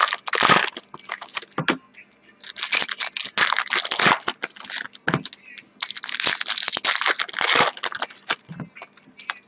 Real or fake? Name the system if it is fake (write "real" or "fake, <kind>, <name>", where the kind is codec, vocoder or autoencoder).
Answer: real